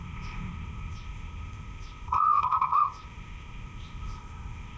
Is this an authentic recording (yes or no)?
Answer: no